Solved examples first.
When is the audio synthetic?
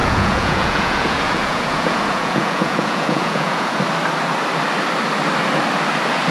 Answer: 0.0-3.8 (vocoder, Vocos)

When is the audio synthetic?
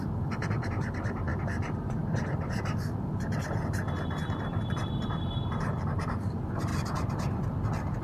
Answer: 0.0-6.7 (vocoder, BigVGAN v2)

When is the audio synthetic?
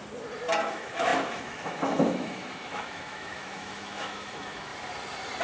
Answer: 0.6-4.7 (autoencoder, DAC-VAE)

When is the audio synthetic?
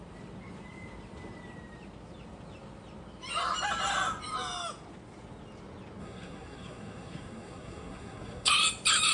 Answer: 6.0-8.5 (codec, SNAC)